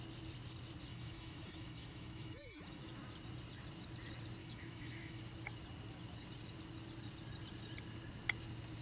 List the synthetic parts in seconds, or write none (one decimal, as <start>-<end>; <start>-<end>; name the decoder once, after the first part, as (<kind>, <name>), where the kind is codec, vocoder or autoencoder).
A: 0.9-2.8 (autoencoder, DAC-VAE); 4.4-5.2